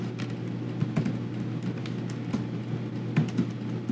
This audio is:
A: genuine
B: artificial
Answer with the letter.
A